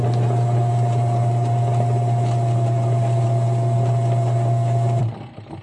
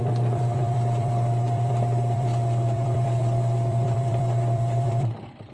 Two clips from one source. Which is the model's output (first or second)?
second